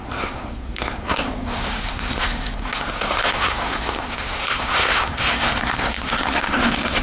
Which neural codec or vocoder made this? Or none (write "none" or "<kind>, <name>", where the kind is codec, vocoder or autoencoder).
codec, SNAC